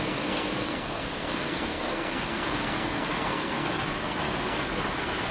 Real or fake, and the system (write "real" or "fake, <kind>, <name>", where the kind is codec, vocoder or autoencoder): fake, codec, SNAC